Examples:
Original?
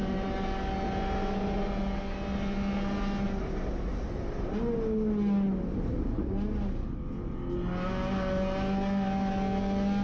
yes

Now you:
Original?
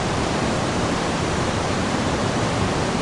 no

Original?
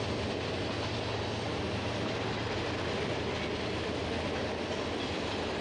yes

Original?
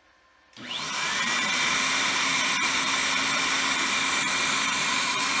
yes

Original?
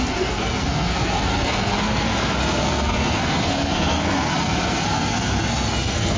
no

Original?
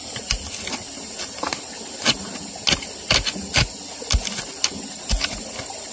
yes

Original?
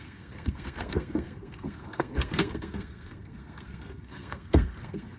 no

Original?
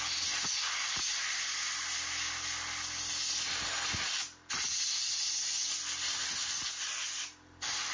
yes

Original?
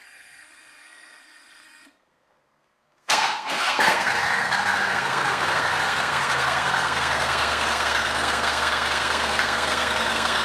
no